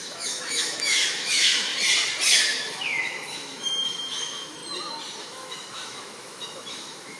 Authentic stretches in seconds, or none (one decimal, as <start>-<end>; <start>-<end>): 1.7-2.6; 4.6-5.2